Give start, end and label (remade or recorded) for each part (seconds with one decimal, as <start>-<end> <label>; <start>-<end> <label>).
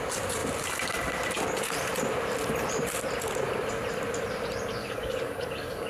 0.0-4.8 recorded; 4.8-5.9 remade